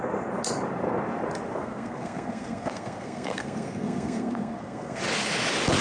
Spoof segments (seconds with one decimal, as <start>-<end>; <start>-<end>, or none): 1.6-5.0